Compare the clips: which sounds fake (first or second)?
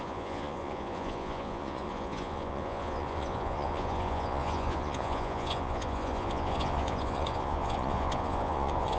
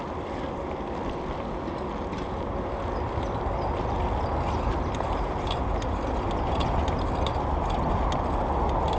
first